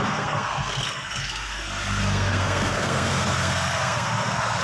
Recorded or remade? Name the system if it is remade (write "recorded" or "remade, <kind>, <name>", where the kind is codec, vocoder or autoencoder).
remade, codec, SNAC